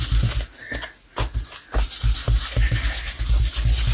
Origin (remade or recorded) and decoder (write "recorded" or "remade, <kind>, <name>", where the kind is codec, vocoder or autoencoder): recorded